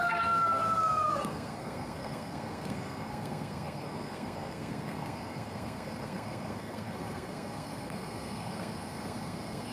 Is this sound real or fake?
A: fake